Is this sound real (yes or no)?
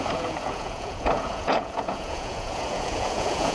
no